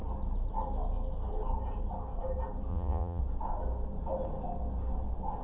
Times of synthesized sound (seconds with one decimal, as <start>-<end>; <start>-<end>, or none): 2.7-3.2